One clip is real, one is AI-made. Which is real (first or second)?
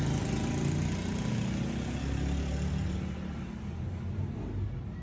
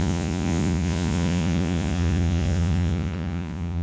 first